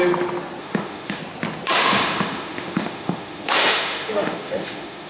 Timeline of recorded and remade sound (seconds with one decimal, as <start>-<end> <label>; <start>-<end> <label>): 0.0-0.6 recorded; 0.6-1.2 remade; 1.2-1.8 recorded; 1.8-5.1 remade